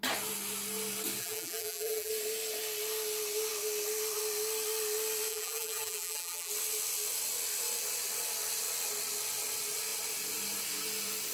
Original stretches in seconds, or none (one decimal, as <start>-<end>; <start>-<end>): 0.0-1.2; 2.1-5.3; 6.5-11.3